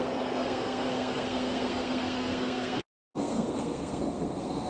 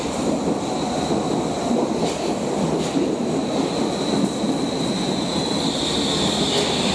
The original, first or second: second